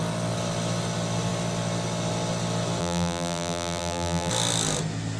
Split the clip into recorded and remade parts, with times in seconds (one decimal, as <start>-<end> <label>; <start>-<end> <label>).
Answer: 0.0-2.8 recorded; 2.8-4.3 remade; 4.3-5.2 recorded